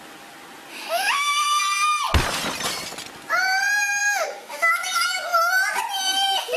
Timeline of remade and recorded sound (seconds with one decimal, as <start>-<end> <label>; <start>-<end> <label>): 0.0-0.7 recorded; 0.7-1.6 remade; 1.6-4.0 recorded; 4.0-4.7 remade; 4.7-6.6 recorded